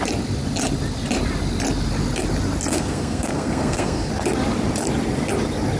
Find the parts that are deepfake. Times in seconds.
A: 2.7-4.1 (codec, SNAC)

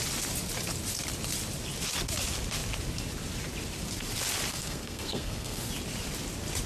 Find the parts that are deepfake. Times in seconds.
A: 4.5-5.7 (codec, SNAC)